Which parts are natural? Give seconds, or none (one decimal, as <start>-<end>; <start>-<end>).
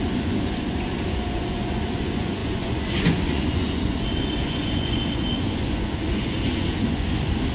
none